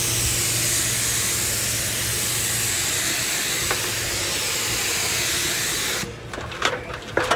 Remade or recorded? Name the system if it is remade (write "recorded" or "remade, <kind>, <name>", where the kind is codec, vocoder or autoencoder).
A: recorded